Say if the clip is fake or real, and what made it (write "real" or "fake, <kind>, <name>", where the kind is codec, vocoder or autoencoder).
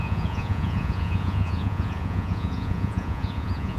fake, vocoder, Vocos